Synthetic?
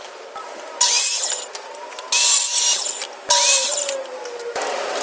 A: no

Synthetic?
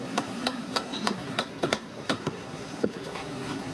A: yes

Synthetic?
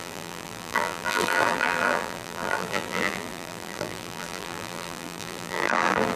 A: yes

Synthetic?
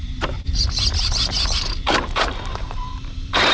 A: yes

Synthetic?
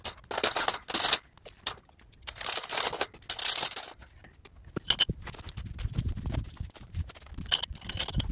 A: no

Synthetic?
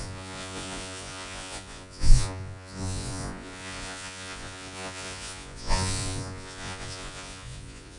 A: yes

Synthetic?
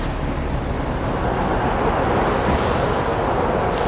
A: no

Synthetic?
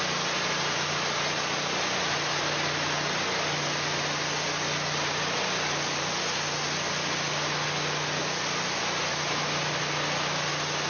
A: no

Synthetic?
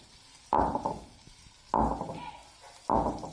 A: no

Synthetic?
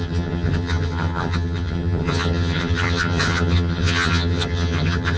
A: yes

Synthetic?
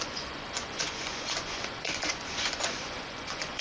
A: yes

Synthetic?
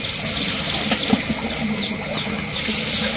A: no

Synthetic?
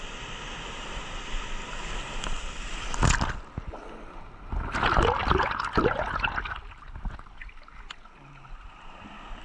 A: no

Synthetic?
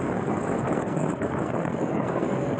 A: yes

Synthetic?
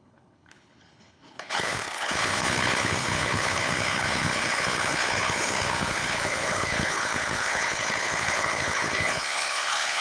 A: yes